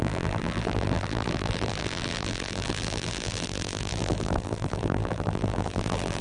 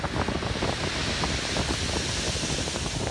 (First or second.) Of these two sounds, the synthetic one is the first